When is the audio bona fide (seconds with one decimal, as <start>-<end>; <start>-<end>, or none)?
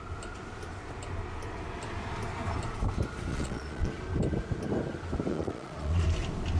0.0-3.3; 3.9-5.3; 6.0-6.6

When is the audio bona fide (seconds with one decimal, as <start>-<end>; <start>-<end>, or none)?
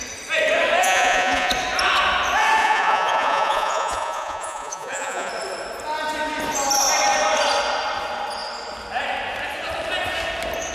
0.0-0.8; 1.5-2.6; 5.3-10.7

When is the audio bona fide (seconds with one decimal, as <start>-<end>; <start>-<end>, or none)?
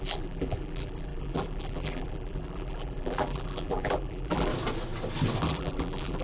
4.5-5.4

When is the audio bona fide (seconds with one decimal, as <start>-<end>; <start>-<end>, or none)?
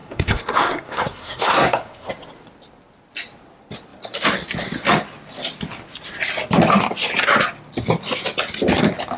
2.1-9.2